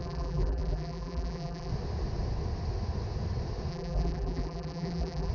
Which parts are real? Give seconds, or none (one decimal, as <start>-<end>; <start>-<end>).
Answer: 1.7-3.7